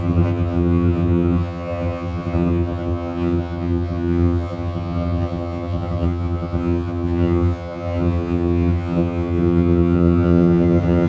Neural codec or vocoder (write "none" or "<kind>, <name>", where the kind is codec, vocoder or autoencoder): vocoder, HiFi-GAN